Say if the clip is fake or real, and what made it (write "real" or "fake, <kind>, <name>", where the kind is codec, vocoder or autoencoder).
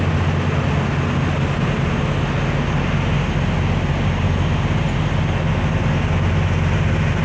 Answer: real